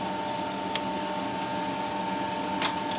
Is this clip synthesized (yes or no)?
no